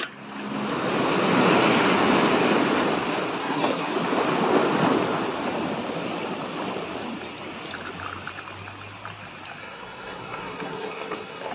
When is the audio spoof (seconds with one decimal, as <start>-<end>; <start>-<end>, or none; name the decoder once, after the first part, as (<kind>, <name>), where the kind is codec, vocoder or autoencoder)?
3.4-3.9 (codec, SNAC); 9.6-11.5